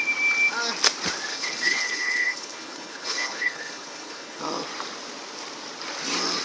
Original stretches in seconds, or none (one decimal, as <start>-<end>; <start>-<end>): 0.0-1.3; 4.4-6.4